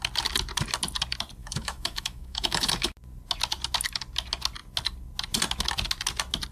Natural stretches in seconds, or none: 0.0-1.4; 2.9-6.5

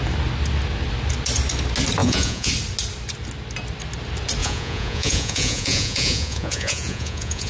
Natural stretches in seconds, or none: 0.0-2.0; 2.5-4.4

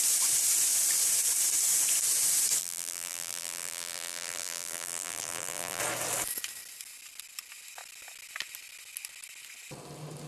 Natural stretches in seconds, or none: 0.0-2.6; 5.8-10.3

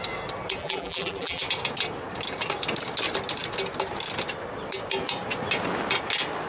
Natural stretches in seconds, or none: 0.0-0.6; 1.4-6.5

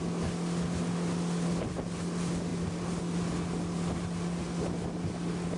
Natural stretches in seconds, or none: 0.0-5.6

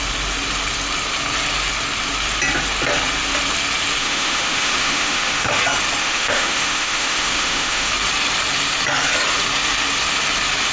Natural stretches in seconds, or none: 0.0-4.0; 5.6-6.0; 7.9-10.7

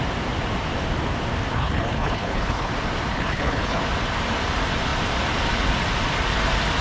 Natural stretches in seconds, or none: 0.0-1.5; 2.7-3.1; 3.8-6.8